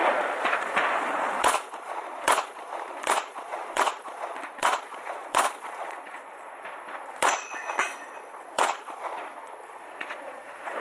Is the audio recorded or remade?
remade